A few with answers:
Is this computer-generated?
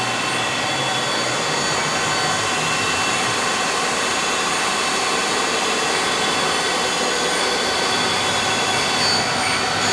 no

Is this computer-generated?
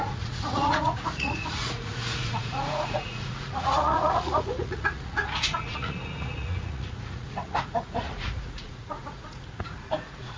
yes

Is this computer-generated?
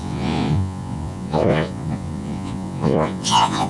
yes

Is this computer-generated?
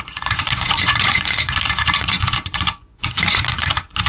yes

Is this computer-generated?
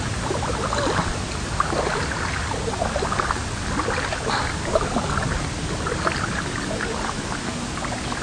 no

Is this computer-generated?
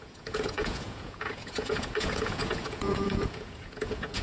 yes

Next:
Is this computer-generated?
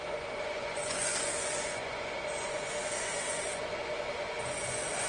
yes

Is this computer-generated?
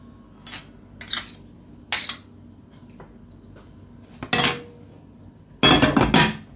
no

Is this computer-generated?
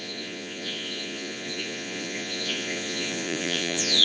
yes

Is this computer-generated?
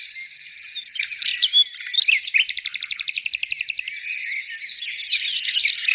no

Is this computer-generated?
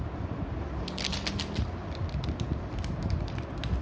no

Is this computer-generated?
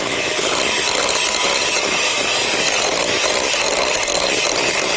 no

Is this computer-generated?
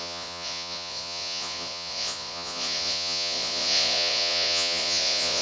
yes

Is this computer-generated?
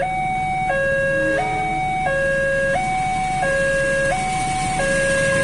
no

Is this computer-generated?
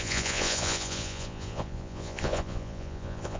yes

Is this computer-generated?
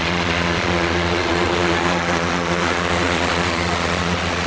yes